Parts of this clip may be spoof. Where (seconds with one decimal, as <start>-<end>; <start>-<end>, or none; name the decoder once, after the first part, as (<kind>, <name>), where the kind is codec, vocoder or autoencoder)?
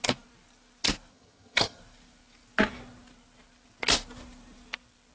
1.1-1.8 (vocoder, HiFi-GAN)